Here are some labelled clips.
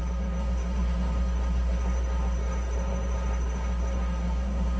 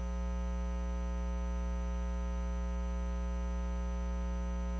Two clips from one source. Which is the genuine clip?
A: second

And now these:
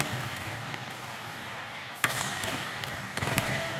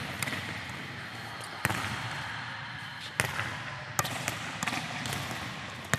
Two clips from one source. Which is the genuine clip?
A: second